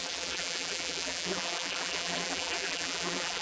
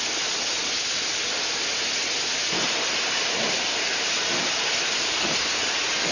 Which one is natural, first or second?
second